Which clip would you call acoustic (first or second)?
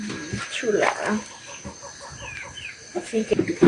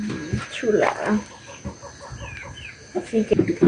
second